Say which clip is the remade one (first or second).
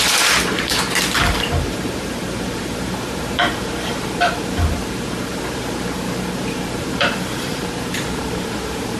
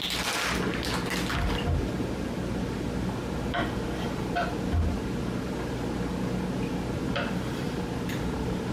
first